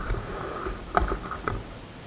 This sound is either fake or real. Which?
real